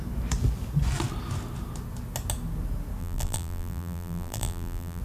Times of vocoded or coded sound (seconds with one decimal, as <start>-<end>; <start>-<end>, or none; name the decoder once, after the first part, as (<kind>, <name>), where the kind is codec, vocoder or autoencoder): 3.0-5.0 (vocoder, BigVGAN v2)